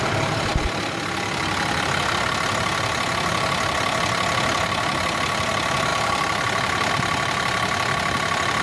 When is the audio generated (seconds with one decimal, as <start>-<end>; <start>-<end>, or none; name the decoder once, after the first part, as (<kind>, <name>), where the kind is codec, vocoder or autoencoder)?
0.0-8.6 (vocoder, BigVGAN v2)